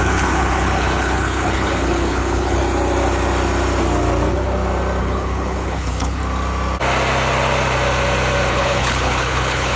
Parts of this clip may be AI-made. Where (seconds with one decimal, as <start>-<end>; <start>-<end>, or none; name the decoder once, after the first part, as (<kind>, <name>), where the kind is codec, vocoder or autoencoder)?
0.0-2.6 (codec, HILCodec); 5.0-6.2; 8.5-9.8